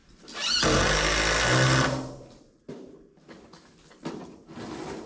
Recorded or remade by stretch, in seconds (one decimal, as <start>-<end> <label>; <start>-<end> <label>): 0.0-5.1 recorded